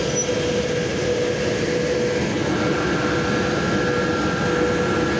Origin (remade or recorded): recorded